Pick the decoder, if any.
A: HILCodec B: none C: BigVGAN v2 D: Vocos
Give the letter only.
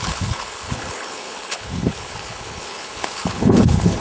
A